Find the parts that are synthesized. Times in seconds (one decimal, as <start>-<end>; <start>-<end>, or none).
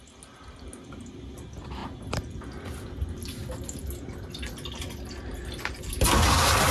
none